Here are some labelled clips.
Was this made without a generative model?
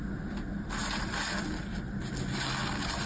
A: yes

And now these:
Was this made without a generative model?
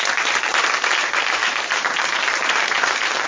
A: no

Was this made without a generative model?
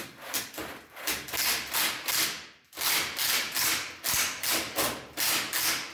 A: no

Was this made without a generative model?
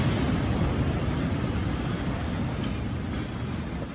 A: yes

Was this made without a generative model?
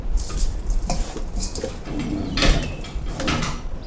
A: no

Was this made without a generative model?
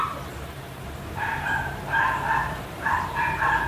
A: no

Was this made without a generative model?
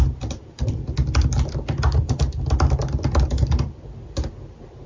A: yes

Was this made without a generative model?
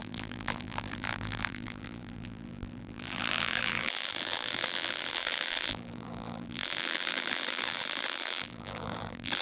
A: no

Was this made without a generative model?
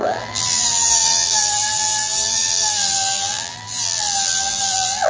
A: no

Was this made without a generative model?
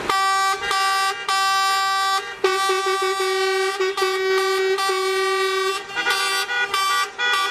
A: yes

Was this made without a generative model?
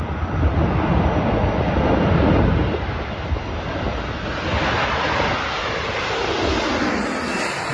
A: yes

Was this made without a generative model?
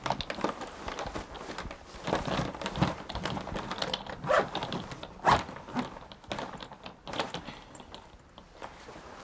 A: yes